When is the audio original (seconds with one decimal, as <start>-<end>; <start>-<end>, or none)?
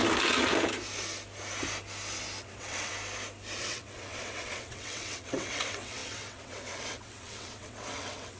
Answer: 0.0-2.4; 2.9-3.6